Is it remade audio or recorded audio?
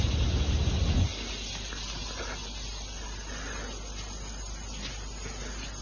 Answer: recorded